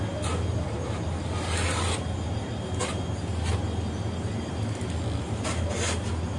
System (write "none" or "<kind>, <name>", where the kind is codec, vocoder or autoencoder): none